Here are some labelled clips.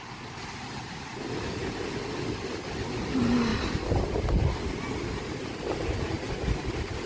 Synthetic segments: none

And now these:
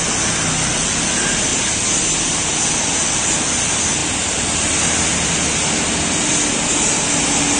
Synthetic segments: none